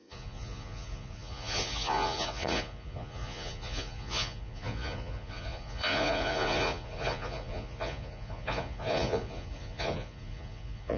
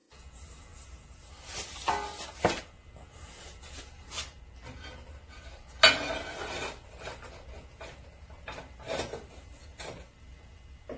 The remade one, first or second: first